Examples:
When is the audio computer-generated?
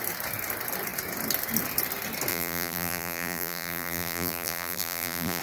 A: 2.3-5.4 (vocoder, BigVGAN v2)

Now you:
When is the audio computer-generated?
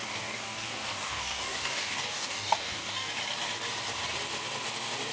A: 0.0-3.1 (codec, DAC)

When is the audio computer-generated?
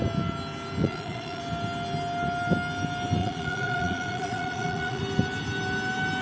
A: 0.8-1.4 (vocoder, Vocos); 3.2-5.0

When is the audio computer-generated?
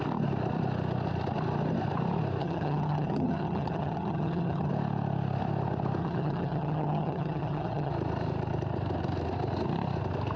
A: 2.4-4.7 (vocoder, HiFi-GAN); 6.0-7.9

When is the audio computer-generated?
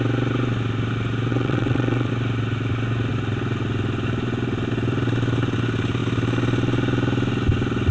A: 1.3-2.1 (vocoder, WaveNeXt)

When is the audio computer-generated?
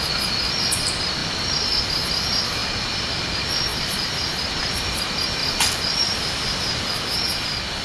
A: 5.4-7.2 (vocoder, BigVGAN v2)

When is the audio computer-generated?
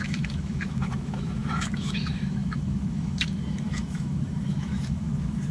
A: 0.0-5.5 (autoencoder, DAC-VAE)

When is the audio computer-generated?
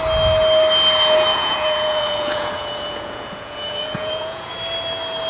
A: 1.3-4.5 (vocoder, Vocos)